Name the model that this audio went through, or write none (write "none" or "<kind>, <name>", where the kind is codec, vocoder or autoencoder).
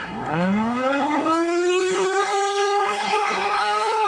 codec, SNAC